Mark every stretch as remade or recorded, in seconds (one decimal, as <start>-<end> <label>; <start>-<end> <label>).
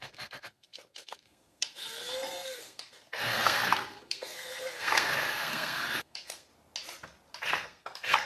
0.0-6.5 remade; 6.5-7.5 recorded; 7.5-8.3 remade